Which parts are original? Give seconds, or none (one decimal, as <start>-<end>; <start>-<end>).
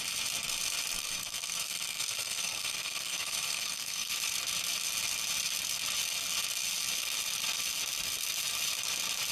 0.0-1.0; 4.1-9.3